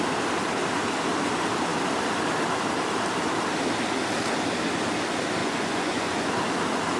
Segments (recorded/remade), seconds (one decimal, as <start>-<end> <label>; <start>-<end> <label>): 0.0-5.4 recorded; 5.4-6.3 remade; 6.3-7.0 recorded